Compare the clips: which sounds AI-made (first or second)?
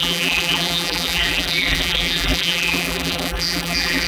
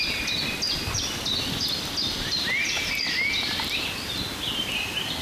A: first